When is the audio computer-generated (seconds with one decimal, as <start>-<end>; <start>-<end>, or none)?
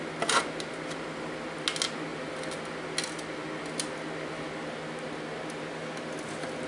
none